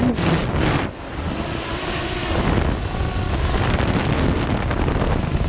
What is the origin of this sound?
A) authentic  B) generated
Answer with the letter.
B